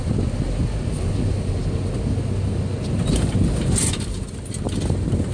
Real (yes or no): yes